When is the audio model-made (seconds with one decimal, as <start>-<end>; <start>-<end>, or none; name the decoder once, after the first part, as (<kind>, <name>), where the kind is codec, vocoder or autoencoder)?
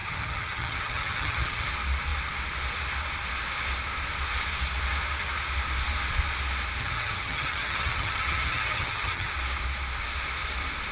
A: 0.0-1.7 (vocoder, HiFi-GAN); 6.8-9.3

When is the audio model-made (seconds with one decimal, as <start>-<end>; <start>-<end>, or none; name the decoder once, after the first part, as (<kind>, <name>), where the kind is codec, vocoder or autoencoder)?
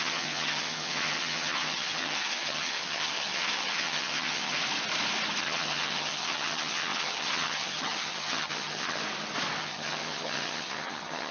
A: 0.0-4.6 (vocoder, HiFi-GAN); 5.4-9.0; 9.6-11.3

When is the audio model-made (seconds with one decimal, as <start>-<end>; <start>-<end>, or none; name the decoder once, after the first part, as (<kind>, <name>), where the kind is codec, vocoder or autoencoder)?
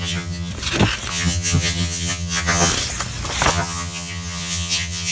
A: 0.0-0.5 (vocoder, HiFi-GAN); 1.1-2.7; 3.5-5.1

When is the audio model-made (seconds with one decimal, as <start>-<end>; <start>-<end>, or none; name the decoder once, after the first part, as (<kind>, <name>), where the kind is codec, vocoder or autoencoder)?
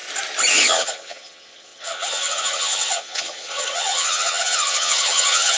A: 0.5-5.6 (vocoder, HiFi-GAN)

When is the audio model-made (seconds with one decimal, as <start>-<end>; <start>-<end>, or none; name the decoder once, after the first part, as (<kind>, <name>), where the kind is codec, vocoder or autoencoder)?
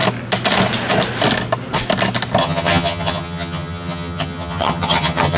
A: 2.4-5.4 (vocoder, HiFi-GAN)